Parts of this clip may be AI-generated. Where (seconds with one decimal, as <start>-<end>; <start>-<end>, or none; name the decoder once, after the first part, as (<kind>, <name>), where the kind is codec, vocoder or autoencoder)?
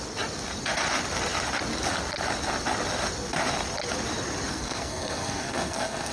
4.5-6.1 (codec, SNAC)